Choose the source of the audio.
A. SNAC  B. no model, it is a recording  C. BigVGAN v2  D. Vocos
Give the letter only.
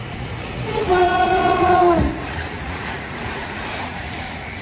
D